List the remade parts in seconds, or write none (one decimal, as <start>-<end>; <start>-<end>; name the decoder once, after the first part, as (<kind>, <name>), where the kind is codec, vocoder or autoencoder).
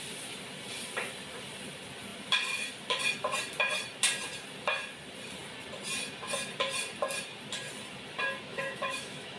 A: 8.5-9.4 (autoencoder, DAC-VAE)